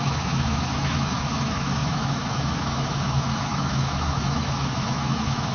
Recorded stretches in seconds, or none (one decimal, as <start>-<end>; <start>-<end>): none